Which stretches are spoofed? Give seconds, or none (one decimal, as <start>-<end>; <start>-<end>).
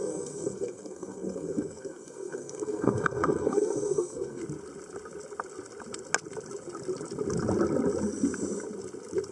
0.0-4.4